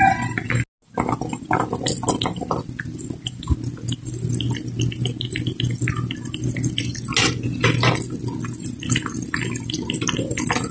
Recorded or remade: recorded